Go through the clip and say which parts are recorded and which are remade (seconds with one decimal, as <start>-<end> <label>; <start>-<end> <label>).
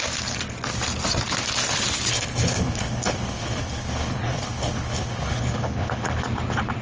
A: 0.0-2.1 recorded; 2.1-6.2 remade; 6.2-6.8 recorded